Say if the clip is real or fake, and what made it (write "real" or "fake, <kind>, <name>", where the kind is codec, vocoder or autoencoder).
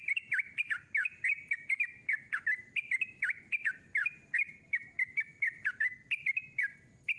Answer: real